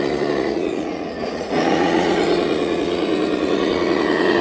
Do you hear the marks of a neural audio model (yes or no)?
yes